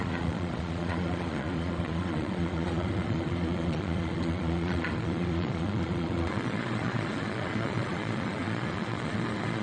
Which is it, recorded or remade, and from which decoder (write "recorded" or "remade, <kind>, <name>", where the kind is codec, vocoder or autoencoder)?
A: remade, vocoder, Vocos